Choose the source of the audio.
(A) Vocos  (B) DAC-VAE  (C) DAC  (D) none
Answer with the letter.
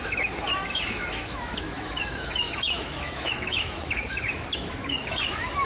B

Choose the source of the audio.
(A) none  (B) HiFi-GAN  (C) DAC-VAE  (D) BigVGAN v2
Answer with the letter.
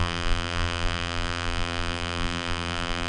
D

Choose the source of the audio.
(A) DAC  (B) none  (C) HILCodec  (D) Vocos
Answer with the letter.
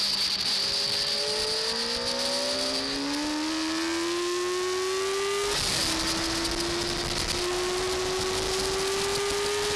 B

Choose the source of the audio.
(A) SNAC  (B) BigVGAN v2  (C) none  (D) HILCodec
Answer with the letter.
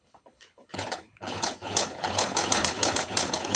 D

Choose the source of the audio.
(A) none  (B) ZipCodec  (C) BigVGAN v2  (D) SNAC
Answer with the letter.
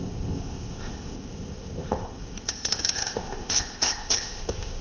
B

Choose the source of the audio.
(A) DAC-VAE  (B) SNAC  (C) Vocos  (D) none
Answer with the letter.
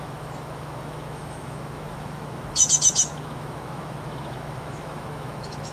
A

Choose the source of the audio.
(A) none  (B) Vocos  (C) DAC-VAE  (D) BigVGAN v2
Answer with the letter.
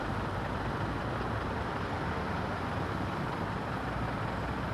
D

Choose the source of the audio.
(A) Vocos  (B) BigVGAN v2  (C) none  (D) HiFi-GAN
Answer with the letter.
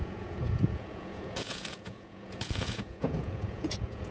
A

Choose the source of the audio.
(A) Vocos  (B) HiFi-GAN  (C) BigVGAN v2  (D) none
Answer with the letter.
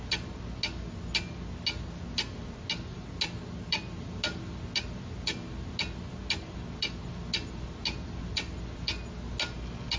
D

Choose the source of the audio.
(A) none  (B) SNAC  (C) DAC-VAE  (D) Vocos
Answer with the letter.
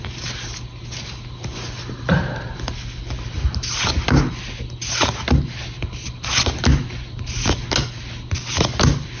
A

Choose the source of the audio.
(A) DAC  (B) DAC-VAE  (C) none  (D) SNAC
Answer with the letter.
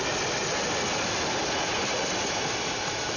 C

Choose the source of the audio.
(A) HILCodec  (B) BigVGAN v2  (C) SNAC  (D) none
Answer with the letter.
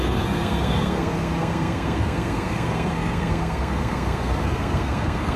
C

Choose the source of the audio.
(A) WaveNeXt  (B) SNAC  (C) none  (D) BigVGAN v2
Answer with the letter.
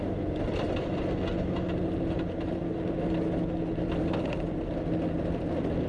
C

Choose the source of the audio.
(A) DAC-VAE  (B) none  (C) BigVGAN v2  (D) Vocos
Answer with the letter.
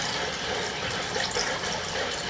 B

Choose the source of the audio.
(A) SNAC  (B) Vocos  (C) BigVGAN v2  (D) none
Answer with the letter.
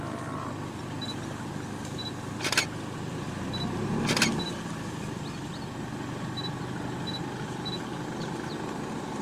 D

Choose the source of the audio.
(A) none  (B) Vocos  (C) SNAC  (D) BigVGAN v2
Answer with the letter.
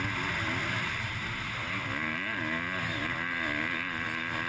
A